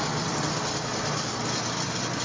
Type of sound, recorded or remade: recorded